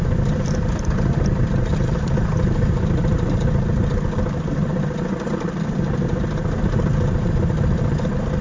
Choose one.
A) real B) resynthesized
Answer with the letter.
A